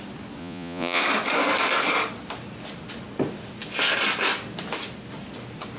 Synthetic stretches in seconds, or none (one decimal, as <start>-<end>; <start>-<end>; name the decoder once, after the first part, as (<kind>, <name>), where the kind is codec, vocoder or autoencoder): 0.4-1.0 (vocoder, Vocos)